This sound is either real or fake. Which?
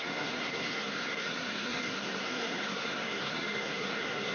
fake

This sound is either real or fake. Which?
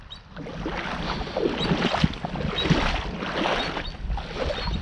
real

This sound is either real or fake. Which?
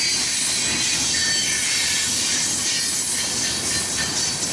real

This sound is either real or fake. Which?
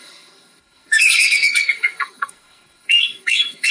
fake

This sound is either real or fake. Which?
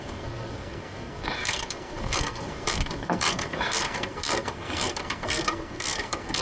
fake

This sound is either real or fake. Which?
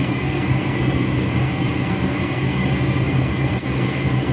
fake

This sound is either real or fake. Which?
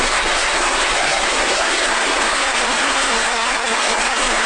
fake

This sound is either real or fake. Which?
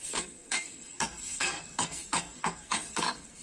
fake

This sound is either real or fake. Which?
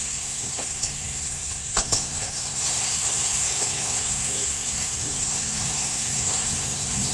fake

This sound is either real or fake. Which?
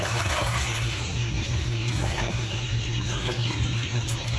fake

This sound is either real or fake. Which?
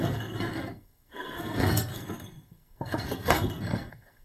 fake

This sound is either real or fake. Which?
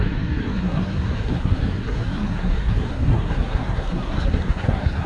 fake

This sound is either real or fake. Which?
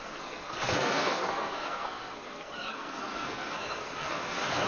fake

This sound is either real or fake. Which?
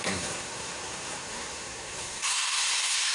fake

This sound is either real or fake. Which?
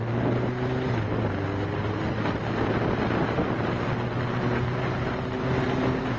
real